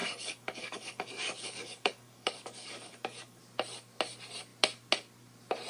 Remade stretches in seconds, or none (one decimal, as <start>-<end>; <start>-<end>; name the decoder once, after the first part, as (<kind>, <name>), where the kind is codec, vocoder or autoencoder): 0.0-3.4 (codec, DAC)